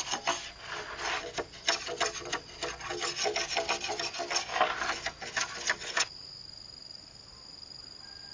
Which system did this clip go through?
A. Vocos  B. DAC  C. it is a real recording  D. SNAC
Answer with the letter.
C